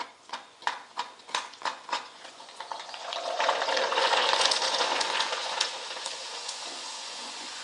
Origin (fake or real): fake